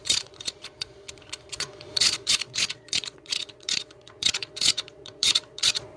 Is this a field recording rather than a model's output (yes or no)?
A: no